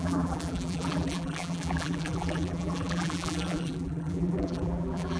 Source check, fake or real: fake